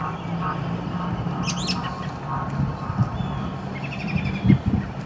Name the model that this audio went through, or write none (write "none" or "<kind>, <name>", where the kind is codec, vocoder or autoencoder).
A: none